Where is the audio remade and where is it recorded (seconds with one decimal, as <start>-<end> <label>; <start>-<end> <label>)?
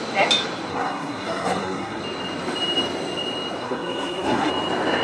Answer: 0.0-0.7 recorded; 0.7-2.0 remade; 2.0-3.6 recorded; 3.6-4.5 remade; 4.5-5.0 recorded